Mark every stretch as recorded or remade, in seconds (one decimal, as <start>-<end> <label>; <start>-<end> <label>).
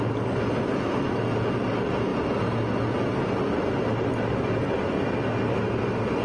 0.0-6.2 recorded